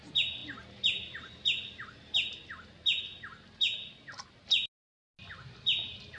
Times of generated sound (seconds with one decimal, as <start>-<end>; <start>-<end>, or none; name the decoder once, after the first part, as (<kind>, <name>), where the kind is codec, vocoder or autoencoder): none